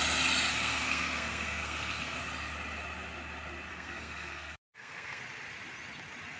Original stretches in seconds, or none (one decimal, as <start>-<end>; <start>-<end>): 0.0-0.5; 2.2-3.7; 5.2-6.4

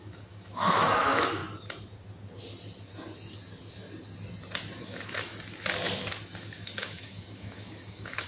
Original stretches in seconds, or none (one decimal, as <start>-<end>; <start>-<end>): 1.4-4.8; 5.3-6.4

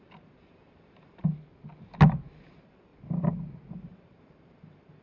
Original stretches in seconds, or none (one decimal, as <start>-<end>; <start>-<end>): 1.2-2.4; 2.9-3.7

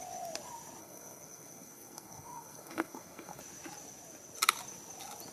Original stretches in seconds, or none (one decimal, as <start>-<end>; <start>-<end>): 0.0-0.8; 3.4-5.3

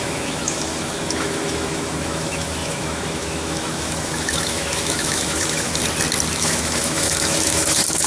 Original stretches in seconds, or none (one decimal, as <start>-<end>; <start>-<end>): 5.8-6.3